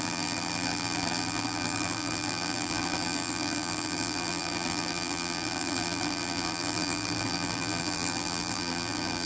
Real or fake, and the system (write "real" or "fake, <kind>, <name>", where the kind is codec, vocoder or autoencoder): fake, vocoder, BigVGAN v2